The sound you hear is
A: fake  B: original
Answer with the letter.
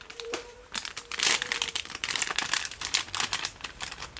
A